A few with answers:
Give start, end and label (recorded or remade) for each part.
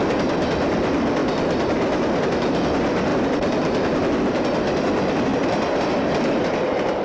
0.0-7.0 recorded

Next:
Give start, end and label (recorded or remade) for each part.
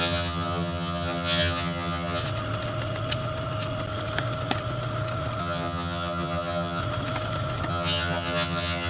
0.0-2.2 remade; 2.2-5.4 recorded; 5.4-6.8 remade; 6.8-7.7 recorded; 7.7-8.9 remade